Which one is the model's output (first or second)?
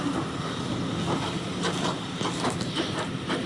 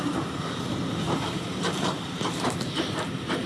second